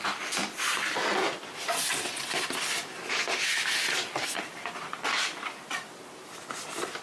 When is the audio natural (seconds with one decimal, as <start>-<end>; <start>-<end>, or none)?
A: 0.0-7.0